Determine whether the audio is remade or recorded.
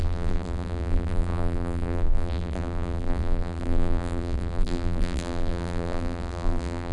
remade